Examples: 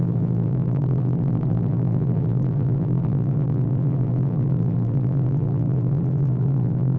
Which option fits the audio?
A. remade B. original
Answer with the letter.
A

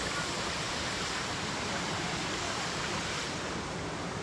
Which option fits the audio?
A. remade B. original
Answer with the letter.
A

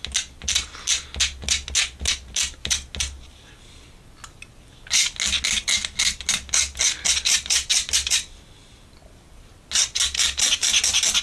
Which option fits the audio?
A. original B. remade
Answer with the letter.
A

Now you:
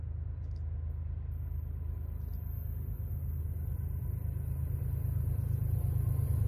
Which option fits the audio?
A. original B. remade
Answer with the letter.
A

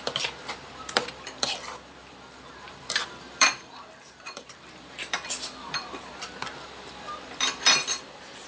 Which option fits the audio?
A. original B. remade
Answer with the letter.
B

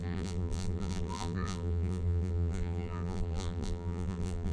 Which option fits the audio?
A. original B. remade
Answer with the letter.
B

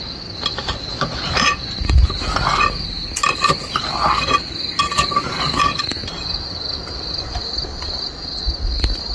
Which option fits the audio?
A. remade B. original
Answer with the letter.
B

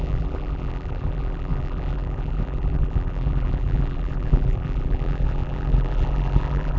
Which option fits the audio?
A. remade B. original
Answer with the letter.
A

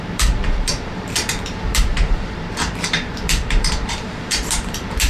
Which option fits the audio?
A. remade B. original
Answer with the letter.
A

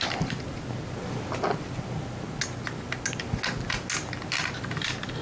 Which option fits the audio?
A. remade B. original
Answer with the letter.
B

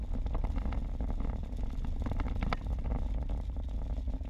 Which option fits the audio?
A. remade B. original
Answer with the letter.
B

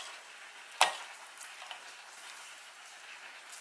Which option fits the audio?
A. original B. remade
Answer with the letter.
A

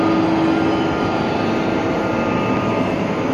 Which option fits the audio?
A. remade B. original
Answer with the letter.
B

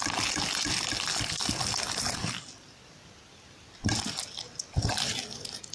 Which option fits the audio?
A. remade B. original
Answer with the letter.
B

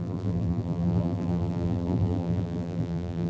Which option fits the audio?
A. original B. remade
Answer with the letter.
B